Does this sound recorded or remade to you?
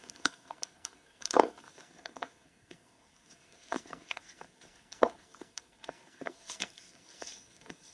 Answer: remade